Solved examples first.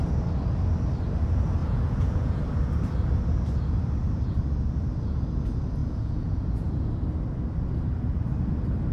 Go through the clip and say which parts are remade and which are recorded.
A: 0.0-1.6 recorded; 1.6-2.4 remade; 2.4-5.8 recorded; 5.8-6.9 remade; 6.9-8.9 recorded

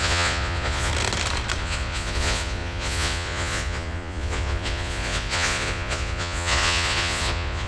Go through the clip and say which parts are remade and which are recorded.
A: 0.0-0.9 remade; 0.9-1.6 recorded; 1.6-7.7 remade

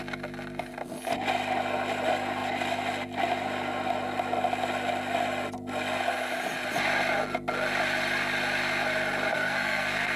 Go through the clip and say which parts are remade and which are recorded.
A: 0.0-9.3 recorded; 9.3-10.2 remade

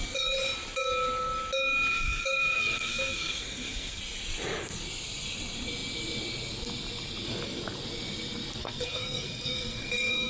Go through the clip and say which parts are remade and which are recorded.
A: 0.0-1.9 recorded; 1.9-4.0 remade; 4.0-8.6 recorded; 8.6-10.3 remade

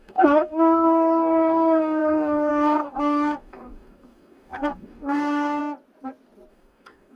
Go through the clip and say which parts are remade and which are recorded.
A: 0.0-5.6 remade; 5.6-6.5 recorded; 6.5-7.2 remade